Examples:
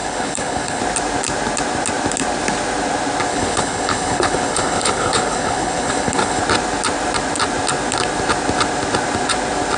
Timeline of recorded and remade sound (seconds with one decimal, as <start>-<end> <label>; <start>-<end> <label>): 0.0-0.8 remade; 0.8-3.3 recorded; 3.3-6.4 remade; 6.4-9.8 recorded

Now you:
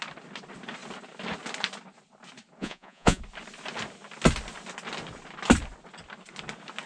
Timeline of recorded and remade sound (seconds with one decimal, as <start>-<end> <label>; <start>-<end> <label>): 0.0-2.6 recorded; 2.6-3.2 remade; 3.2-6.9 recorded

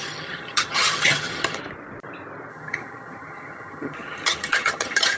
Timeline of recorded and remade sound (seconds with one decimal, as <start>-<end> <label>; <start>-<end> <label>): 0.0-1.6 remade; 1.6-2.5 recorded; 2.5-5.2 remade

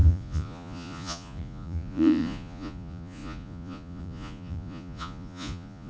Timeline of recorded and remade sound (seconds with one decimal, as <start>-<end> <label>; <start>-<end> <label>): 0.0-5.9 remade

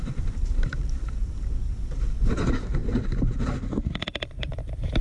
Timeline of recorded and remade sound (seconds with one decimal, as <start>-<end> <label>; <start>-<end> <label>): 0.0-1.2 remade; 1.2-2.3 recorded; 2.3-2.8 remade; 2.8-4.4 recorded; 4.4-5.0 remade

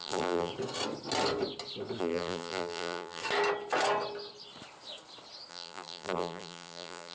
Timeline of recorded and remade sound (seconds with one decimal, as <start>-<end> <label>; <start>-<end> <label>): 0.0-0.5 remade; 0.5-2.0 recorded; 2.0-3.2 remade; 3.2-5.5 recorded; 5.5-7.1 remade

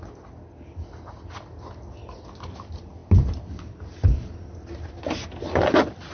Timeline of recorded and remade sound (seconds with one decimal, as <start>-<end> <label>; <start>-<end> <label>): 0.0-6.1 recorded

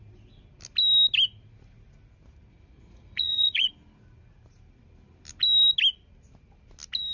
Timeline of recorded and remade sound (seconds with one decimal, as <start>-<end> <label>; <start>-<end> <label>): 0.0-2.5 recorded; 2.5-3.7 remade; 3.7-7.1 recorded